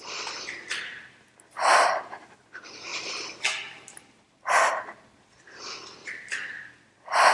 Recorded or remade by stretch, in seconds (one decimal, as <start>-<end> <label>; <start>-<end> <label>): 0.0-2.9 recorded; 2.9-7.3 remade